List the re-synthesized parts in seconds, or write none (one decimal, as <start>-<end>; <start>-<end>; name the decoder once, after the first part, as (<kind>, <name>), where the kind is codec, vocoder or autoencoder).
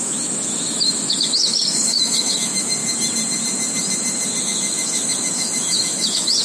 0.0-2.8 (autoencoder, DAC-VAE); 4.4-6.4